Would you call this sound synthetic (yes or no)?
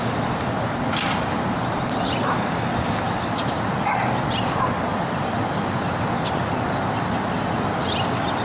no